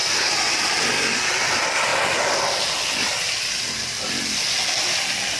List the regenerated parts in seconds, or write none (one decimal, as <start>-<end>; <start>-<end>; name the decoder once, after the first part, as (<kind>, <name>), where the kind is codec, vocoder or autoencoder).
0.5-5.4 (vocoder, BigVGAN v2)